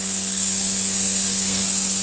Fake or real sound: fake